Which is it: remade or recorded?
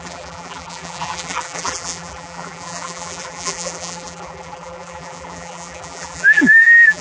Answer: remade